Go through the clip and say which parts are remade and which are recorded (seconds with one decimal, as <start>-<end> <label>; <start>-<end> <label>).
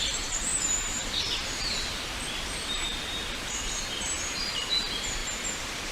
0.0-5.9 remade